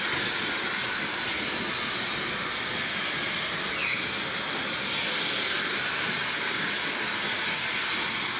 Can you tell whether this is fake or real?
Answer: real